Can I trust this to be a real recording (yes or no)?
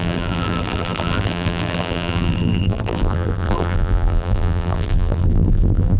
no